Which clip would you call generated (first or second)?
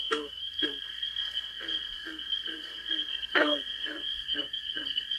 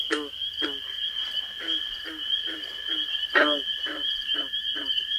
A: first